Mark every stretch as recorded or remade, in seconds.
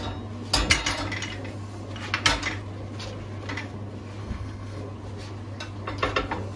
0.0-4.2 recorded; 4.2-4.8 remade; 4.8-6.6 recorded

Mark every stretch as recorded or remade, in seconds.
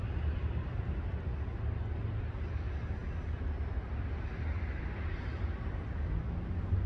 0.0-6.9 recorded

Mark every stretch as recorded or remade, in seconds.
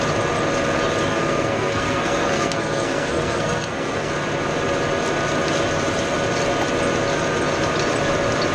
0.0-1.1 recorded; 1.1-4.1 remade; 4.1-8.5 recorded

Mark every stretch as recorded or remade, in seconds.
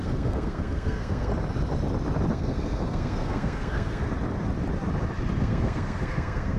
0.0-1.3 remade; 1.3-2.3 recorded; 2.3-4.0 remade; 4.0-5.4 recorded; 5.4-6.6 remade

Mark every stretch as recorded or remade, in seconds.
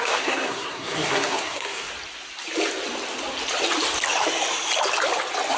0.0-1.9 remade; 1.9-5.6 recorded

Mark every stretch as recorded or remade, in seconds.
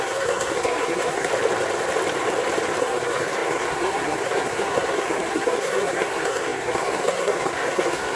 0.0-1.3 remade; 1.3-2.8 recorded; 2.8-8.1 remade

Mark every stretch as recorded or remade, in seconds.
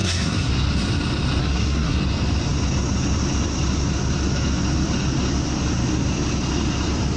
0.0-0.5 remade; 0.5-1.4 recorded; 1.4-2.0 remade; 2.0-7.2 recorded